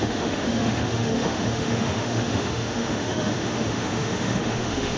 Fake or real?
fake